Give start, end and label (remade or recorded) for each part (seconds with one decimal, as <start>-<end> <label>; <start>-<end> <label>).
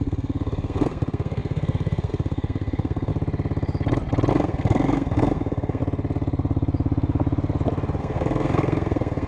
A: 0.0-3.1 remade; 3.1-4.3 recorded; 4.3-5.8 remade; 5.8-8.0 recorded; 8.0-9.3 remade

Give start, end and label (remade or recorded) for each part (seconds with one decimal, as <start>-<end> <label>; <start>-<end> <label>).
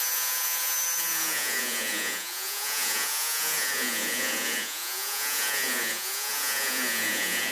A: 0.0-7.5 remade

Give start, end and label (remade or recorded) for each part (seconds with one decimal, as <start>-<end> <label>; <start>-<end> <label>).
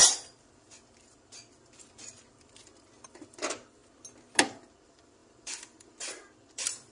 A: 0.0-3.8 remade; 3.8-4.4 recorded; 4.4-6.9 remade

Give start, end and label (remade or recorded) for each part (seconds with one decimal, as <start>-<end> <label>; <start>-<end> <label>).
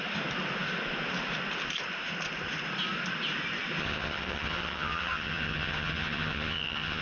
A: 0.0-3.8 recorded; 3.8-7.0 remade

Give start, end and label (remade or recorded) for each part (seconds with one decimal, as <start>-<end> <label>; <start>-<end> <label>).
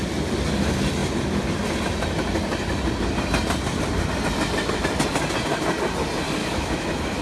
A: 0.0-6.4 recorded; 6.4-7.2 remade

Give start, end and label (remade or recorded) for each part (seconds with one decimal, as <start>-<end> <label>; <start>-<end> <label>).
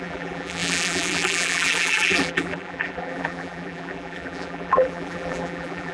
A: 0.0-5.9 remade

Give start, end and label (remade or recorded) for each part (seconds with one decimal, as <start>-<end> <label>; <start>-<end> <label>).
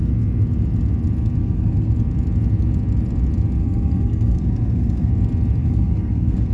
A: 0.0-1.4 recorded; 1.4-1.9 remade; 1.9-3.6 recorded; 3.6-5.1 remade; 5.1-5.6 recorded; 5.6-6.5 remade